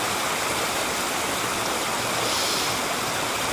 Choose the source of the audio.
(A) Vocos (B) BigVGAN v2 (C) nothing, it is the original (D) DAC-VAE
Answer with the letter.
C